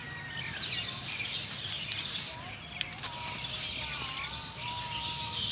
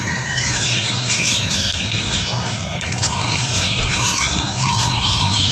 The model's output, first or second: second